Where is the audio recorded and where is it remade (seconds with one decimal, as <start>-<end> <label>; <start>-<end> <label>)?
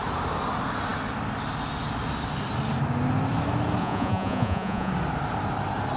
0.0-3.8 recorded; 3.8-4.9 remade; 4.9-6.0 recorded